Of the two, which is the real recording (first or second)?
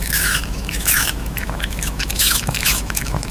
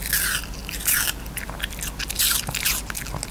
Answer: second